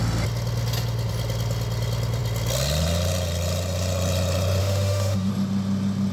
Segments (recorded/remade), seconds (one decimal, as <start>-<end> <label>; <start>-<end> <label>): 0.0-4.6 recorded; 4.6-5.3 remade; 5.3-6.1 recorded